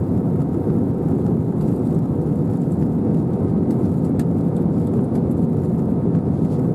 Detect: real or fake real